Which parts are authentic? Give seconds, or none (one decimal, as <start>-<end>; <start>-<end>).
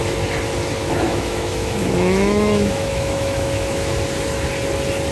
0.0-0.8; 3.9-5.1